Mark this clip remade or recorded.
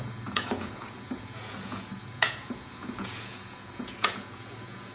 remade